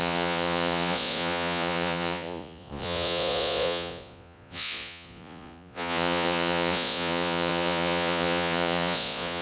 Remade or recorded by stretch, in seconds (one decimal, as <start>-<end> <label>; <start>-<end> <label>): 0.0-9.4 remade